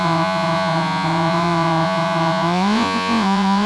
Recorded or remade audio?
remade